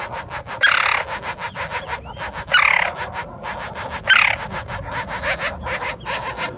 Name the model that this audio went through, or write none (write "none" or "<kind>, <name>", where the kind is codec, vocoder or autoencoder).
none